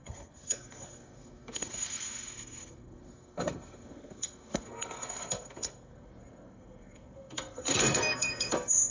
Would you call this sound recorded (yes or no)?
no